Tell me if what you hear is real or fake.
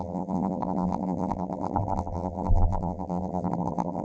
fake